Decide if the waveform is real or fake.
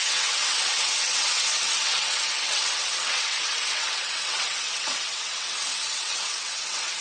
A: fake